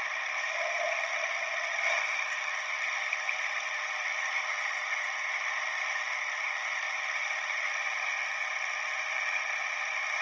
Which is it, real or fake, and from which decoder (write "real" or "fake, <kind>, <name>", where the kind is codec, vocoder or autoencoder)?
real